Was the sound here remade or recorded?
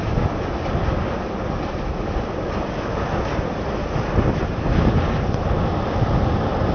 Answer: recorded